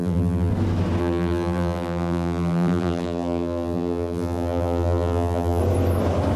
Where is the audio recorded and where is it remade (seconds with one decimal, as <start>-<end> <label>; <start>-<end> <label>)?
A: 0.0-0.5 remade; 0.5-1.0 recorded; 1.0-5.6 remade; 5.6-6.4 recorded